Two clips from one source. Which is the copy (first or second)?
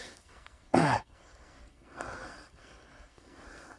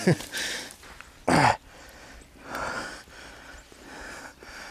first